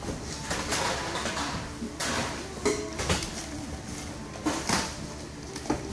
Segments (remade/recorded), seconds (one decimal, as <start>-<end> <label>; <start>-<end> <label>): 0.0-5.9 recorded